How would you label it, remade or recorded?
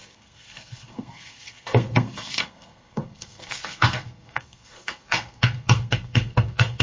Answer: remade